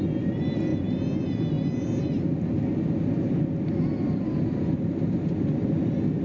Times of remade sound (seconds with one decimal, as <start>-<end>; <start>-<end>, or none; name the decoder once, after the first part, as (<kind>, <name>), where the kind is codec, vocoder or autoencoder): none